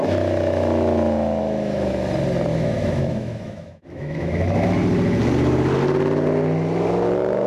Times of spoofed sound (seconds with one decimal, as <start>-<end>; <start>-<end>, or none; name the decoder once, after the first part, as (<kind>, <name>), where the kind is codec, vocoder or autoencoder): 1.4-1.9 (autoencoder, DAC-VAE); 2.5-4.7